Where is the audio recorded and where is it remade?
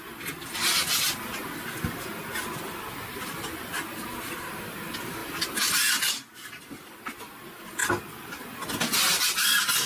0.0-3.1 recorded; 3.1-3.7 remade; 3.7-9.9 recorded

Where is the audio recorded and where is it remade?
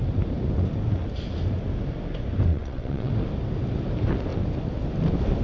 0.0-2.5 recorded; 2.5-3.1 remade; 3.1-5.4 recorded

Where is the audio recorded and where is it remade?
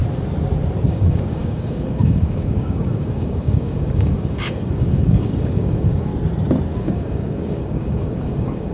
0.0-0.9 recorded; 0.9-6.1 remade; 6.1-6.8 recorded; 6.8-8.7 remade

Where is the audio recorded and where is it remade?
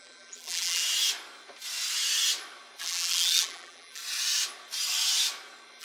0.0-0.8 remade; 0.8-2.8 recorded; 2.8-4.0 remade; 4.0-5.8 recorded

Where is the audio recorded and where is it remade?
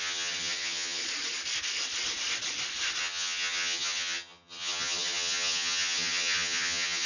0.0-1.0 remade; 1.0-3.0 recorded; 3.0-7.1 remade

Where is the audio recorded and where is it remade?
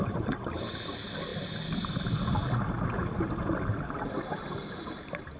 0.0-5.4 recorded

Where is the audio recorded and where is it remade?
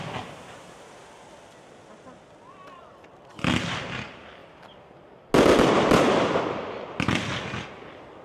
0.0-8.2 recorded